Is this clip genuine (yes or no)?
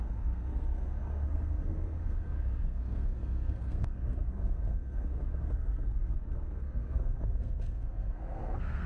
no